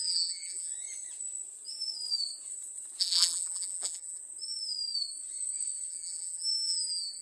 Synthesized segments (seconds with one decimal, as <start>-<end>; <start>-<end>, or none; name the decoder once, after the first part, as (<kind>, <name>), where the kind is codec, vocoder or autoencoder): 0.0-0.7 (vocoder, BigVGAN v2); 3.0-4.2; 5.9-7.2